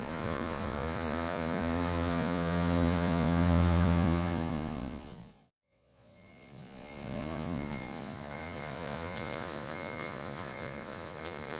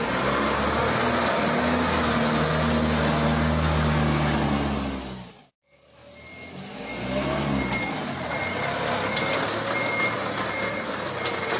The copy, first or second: first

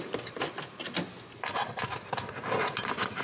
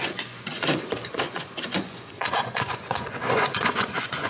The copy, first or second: second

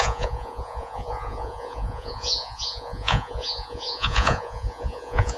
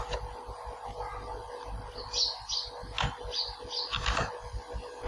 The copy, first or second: first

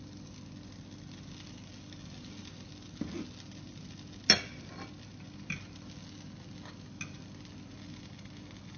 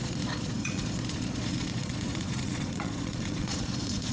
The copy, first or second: second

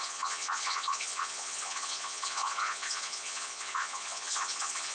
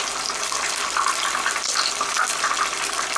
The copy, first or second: first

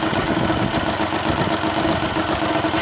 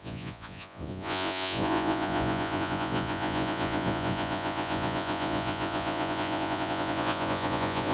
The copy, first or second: second